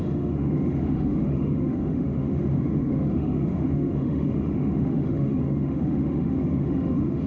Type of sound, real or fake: fake